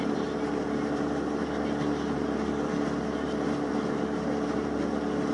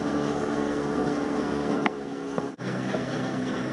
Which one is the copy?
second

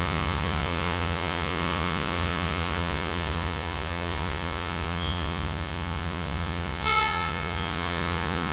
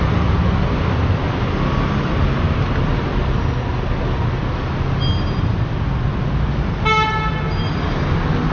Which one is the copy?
first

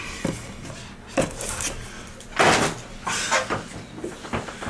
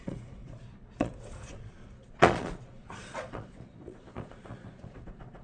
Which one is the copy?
second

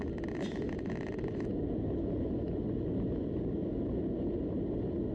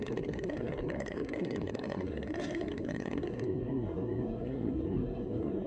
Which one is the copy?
second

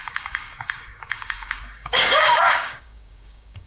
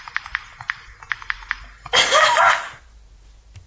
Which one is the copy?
first